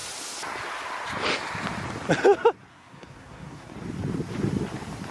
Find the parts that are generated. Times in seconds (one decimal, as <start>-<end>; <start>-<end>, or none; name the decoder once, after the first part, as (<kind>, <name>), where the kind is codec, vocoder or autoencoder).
2.7-3.7 (codec, SNAC)